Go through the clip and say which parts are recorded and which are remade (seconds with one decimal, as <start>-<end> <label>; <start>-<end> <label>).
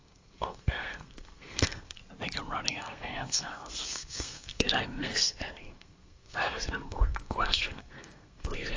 0.0-2.0 remade; 2.0-2.8 recorded; 2.8-8.8 remade